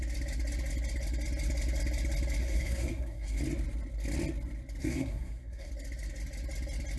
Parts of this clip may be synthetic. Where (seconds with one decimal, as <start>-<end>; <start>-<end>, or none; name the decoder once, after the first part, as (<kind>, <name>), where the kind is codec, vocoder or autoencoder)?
2.4-3.4 (codec, SNAC); 4.8-5.7